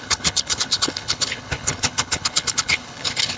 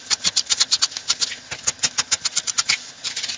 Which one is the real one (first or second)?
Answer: second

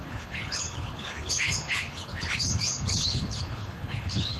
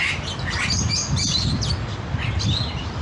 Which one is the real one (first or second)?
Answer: second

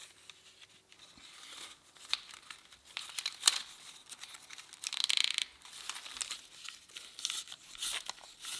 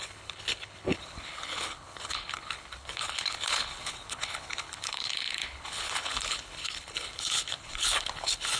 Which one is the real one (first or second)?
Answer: first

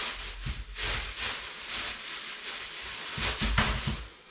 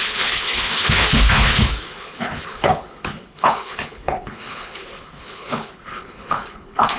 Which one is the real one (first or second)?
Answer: first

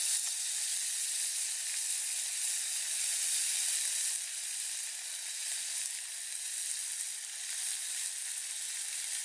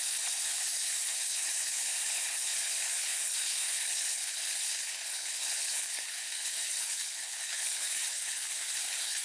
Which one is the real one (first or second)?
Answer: first